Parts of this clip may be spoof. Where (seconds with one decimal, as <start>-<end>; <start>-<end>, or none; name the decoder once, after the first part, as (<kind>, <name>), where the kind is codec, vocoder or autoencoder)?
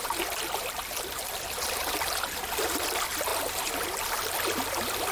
none